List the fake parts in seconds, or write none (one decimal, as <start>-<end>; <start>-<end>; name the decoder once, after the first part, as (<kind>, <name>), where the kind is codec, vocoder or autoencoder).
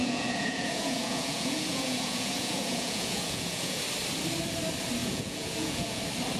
0.0-3.8 (vocoder, Vocos); 5.0-6.0